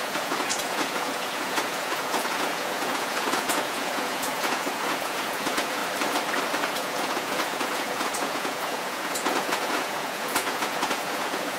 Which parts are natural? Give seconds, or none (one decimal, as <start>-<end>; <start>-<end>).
5.8-6.6